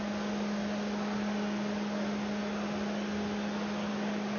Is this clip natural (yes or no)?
yes